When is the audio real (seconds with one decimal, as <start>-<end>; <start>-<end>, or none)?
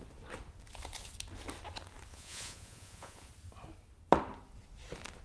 0.0-2.1; 3.3-5.2